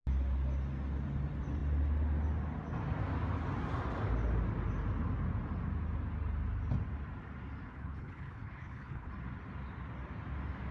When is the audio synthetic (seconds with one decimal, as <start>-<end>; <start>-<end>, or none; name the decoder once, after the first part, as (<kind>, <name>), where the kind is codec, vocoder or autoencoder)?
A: 7.7-9.1 (codec, HILCodec)